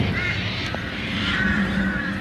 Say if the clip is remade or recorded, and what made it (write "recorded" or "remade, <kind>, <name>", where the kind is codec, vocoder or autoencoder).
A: recorded